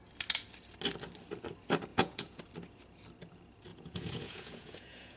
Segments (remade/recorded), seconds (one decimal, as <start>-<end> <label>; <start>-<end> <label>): 0.0-1.9 recorded; 1.9-2.4 remade; 2.4-3.7 recorded; 3.7-5.2 remade